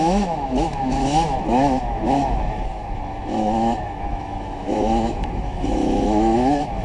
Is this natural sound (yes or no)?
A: no